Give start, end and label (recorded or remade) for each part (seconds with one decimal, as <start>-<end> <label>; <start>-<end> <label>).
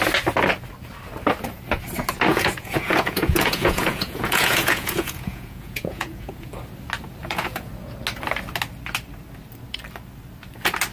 0.0-2.3 recorded; 2.3-6.5 remade; 6.5-7.2 recorded; 7.2-7.7 remade; 7.7-10.9 recorded